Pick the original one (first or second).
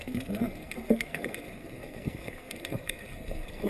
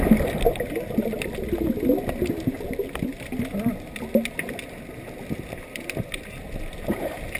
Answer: second